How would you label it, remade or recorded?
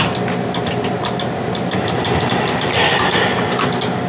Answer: recorded